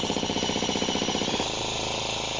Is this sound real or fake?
real